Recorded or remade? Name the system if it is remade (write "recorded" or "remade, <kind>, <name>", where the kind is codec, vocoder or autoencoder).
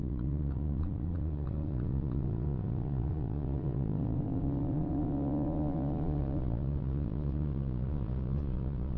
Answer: remade, vocoder, Vocos